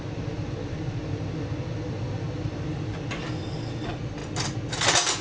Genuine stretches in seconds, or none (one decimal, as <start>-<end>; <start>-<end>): 0.0-5.2